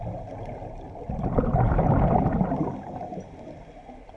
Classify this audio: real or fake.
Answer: real